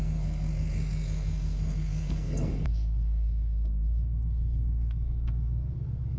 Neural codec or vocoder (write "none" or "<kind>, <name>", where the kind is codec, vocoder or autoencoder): codec, SNAC